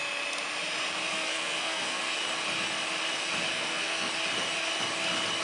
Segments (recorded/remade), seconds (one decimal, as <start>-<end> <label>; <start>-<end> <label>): 0.0-1.1 recorded; 1.1-2.1 remade; 2.1-3.5 recorded; 3.5-4.1 remade; 4.1-5.4 recorded